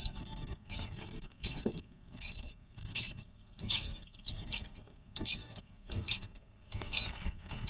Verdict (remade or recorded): remade